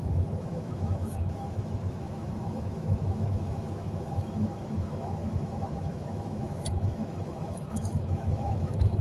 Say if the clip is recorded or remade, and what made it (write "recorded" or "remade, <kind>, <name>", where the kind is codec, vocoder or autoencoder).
remade, autoencoder, DAC-VAE